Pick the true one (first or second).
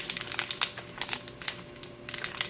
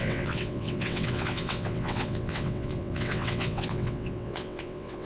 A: first